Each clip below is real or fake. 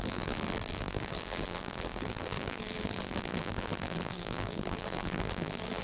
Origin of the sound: fake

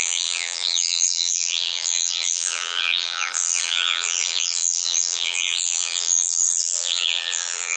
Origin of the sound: fake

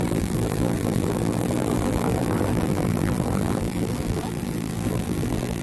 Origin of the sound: fake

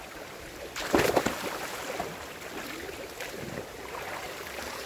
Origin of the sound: fake